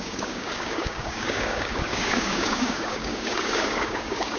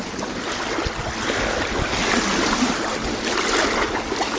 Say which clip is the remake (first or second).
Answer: first